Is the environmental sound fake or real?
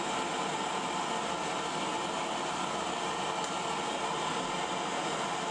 real